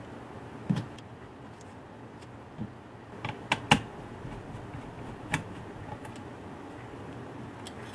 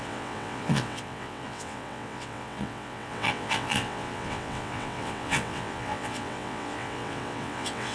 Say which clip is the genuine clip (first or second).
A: first